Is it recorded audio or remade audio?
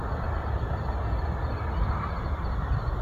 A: recorded